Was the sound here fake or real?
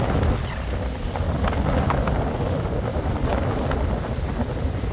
real